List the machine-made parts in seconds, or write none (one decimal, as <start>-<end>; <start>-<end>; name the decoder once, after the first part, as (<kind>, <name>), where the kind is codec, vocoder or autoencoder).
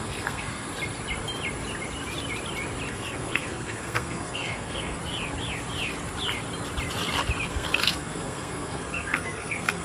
0.0-0.7 (codec, SNAC); 2.9-5.0; 7.5-9.8